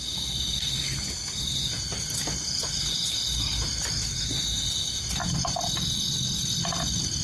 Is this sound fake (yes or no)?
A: no